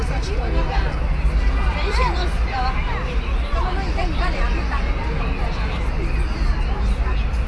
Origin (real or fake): real